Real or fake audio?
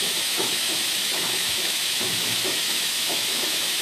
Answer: fake